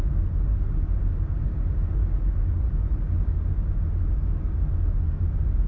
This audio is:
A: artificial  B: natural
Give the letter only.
B